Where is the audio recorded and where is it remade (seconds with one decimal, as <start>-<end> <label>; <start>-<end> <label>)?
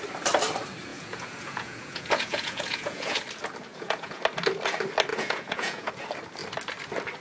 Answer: 0.0-0.9 recorded; 0.9-3.2 remade; 3.2-3.7 recorded; 3.7-4.2 remade; 4.2-5.1 recorded; 5.1-5.9 remade; 5.9-7.2 recorded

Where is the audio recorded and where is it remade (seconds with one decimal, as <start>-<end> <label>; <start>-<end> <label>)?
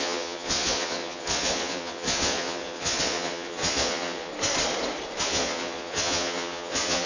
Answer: 0.0-4.3 remade; 4.3-5.2 recorded; 5.2-7.1 remade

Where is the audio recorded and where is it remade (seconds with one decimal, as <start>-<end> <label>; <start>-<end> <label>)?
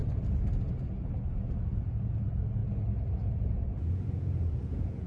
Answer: 0.0-1.3 recorded; 1.3-2.6 remade; 2.6-3.1 recorded; 3.1-5.1 remade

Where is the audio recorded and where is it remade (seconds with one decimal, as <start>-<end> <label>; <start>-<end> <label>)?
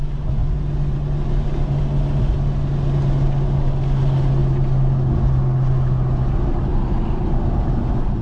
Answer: 0.0-8.2 recorded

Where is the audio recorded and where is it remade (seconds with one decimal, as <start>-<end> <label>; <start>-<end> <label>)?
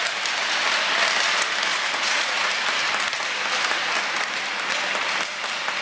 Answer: 0.0-1.7 recorded; 1.7-2.5 remade; 2.5-5.8 recorded